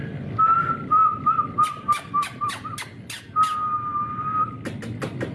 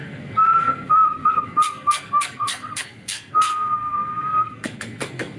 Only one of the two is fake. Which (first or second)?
second